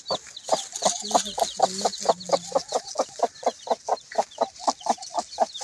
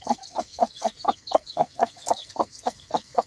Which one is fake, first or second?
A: second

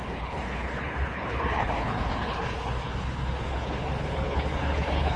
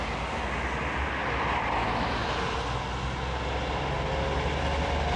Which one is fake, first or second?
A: first